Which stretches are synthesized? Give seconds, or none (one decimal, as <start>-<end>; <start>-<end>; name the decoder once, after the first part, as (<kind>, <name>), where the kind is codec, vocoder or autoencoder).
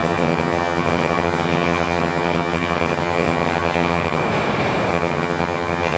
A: 0.0-4.2 (vocoder, HiFi-GAN); 4.9-6.0